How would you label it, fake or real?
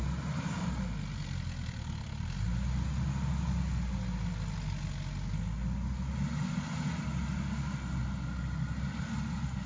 real